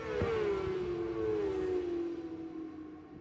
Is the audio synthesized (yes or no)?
no